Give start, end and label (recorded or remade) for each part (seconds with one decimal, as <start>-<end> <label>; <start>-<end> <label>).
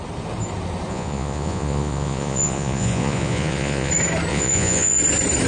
0.0-0.9 recorded; 0.9-3.9 remade; 3.9-4.3 recorded; 4.3-5.0 remade; 5.0-5.5 recorded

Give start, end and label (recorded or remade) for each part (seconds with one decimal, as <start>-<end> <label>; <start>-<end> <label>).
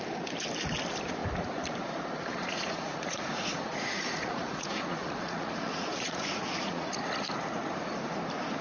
0.0-2.2 recorded; 2.2-7.3 remade; 7.3-8.6 recorded